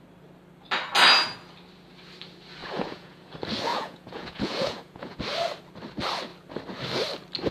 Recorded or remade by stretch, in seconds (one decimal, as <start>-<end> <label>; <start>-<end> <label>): 0.0-2.6 recorded; 2.6-3.3 remade; 3.3-3.7 recorded; 3.7-5.2 remade; 5.2-7.5 recorded